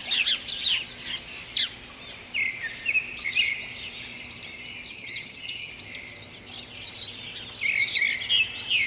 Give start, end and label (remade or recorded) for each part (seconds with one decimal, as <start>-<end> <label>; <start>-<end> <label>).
0.0-4.9 recorded; 4.9-5.7 remade; 5.7-8.9 recorded